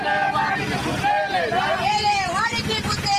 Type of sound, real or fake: real